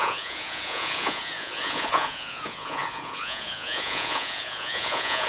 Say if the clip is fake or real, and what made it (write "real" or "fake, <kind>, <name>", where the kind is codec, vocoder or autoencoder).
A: fake, vocoder, Vocos